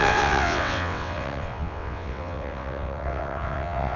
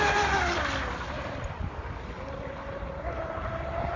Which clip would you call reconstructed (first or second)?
first